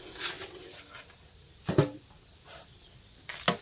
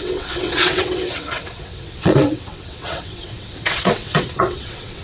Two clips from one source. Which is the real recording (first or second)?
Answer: first